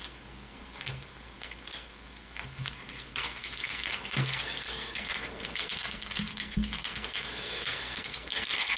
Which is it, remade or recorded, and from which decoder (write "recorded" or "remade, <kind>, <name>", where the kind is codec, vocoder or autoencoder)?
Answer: remade, codec, SNAC